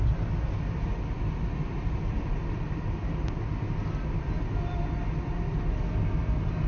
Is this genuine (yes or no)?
yes